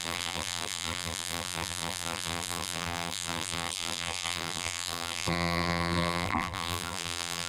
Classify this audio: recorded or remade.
remade